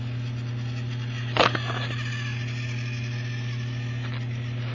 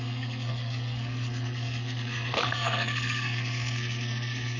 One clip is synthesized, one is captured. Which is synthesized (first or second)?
second